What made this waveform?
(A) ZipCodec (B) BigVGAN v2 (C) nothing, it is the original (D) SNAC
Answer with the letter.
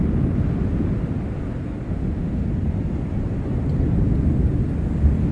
C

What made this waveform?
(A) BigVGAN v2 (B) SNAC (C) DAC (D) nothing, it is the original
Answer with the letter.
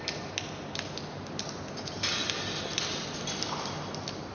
D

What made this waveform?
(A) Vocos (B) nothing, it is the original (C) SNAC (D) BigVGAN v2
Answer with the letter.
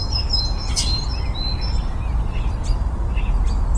B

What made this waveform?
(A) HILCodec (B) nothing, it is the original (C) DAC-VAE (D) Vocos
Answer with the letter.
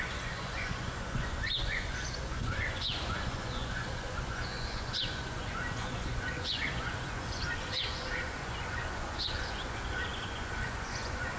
D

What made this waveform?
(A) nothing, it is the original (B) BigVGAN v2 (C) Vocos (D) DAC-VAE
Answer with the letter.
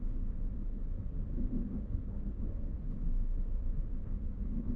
D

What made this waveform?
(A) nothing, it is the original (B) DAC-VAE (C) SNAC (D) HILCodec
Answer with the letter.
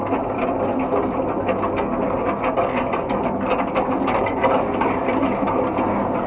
A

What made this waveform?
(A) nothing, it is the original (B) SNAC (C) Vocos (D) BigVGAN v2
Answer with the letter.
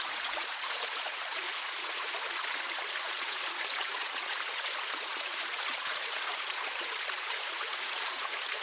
C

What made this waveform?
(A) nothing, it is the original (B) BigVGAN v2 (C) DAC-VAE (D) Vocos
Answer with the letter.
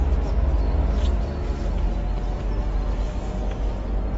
A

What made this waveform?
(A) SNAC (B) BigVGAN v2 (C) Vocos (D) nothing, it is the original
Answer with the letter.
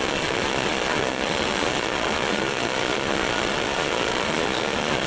C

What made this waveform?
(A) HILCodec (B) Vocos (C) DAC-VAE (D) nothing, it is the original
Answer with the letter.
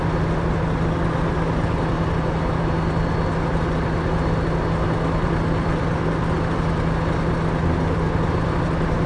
D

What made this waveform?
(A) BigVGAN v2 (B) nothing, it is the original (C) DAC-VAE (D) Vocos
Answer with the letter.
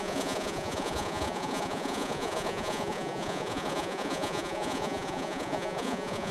D